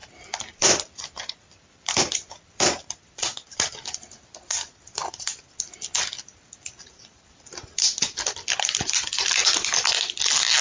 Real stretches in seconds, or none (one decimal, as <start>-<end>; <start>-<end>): none